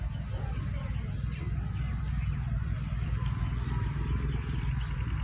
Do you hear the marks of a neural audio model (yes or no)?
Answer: no